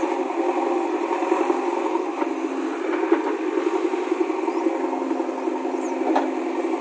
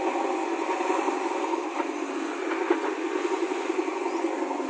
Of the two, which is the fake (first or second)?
second